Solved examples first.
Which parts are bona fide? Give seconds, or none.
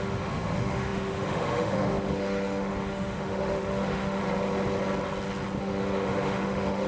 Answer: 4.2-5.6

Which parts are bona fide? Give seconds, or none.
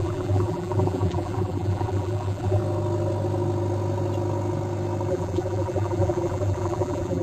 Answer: 2.6-5.1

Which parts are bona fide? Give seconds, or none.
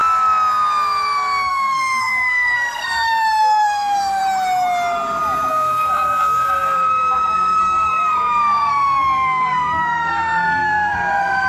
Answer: 0.0-1.5; 4.2-5.5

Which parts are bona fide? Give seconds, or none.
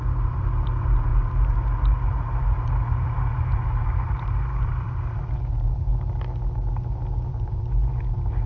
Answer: 5.9-7.3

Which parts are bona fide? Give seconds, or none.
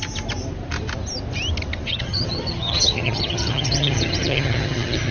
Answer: 0.0-1.9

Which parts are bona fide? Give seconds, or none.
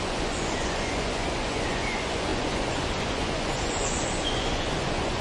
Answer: none